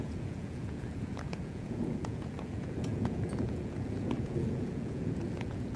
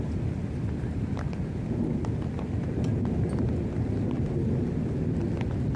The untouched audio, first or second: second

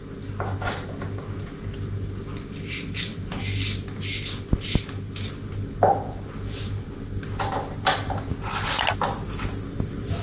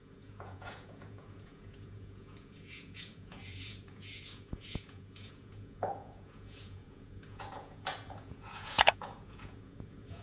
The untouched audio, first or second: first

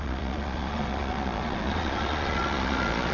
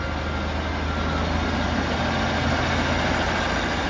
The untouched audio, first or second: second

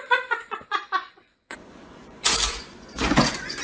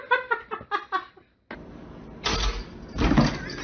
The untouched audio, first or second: second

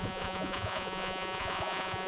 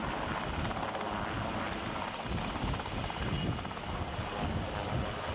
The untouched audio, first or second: second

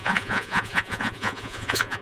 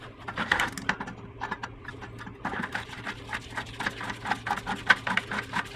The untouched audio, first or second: second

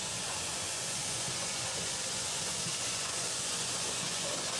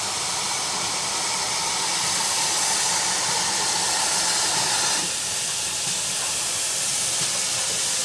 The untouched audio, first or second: second